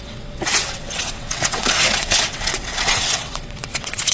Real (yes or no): no